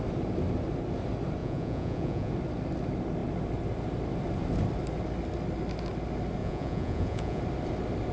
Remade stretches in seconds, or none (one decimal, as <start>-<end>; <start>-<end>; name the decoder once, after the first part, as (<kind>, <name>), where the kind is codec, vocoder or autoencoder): 1.4-2.3 (vocoder, Vocos); 6.4-7.4